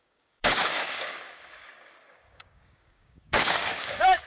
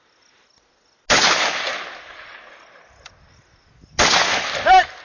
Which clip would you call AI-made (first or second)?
first